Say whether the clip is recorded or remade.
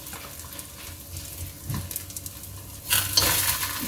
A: recorded